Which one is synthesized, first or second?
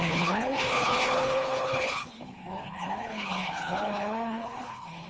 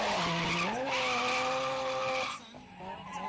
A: first